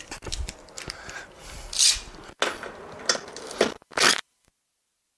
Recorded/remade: recorded